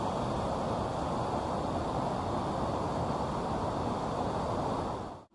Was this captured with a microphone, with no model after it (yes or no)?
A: yes